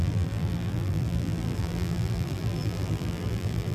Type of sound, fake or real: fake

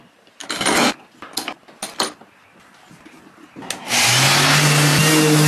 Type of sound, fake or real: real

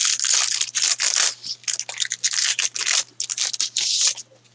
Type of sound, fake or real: real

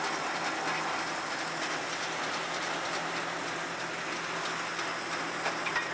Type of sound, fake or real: real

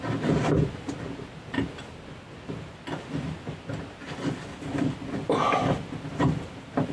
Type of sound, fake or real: real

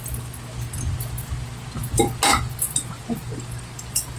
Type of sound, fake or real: real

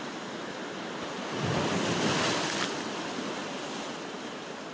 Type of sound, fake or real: real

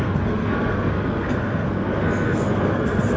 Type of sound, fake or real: fake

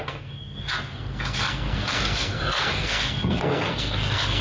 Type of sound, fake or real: fake